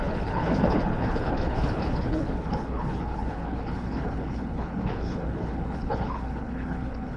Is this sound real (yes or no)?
no